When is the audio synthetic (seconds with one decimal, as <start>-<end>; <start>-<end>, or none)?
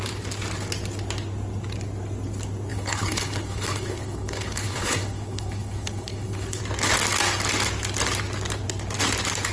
2.7-6.6